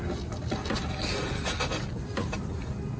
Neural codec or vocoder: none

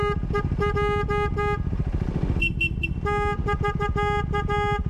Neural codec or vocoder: none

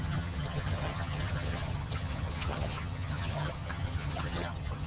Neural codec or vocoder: vocoder, HiFi-GAN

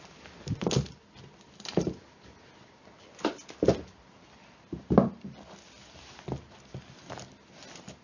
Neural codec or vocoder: none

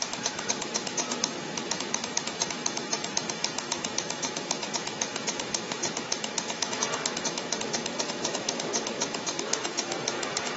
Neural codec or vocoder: autoencoder, DAC-VAE